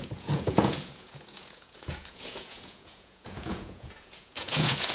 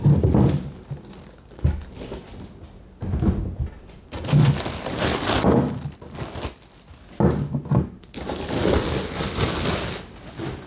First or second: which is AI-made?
first